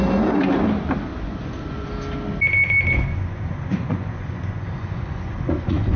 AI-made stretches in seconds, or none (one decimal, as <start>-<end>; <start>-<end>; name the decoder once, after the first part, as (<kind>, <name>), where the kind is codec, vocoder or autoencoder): 1.1-1.9 (vocoder, Vocos); 3.1-6.0